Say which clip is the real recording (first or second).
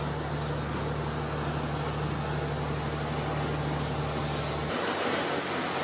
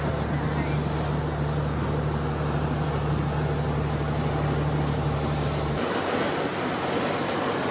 first